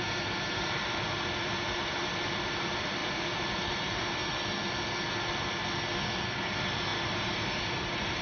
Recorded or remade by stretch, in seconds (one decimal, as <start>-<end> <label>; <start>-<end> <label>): 0.0-4.2 remade; 4.2-6.3 recorded; 6.3-8.2 remade